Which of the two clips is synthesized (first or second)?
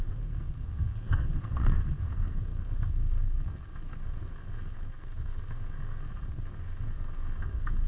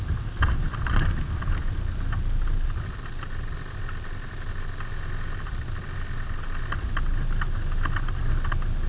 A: first